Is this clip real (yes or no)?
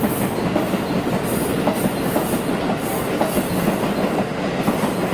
yes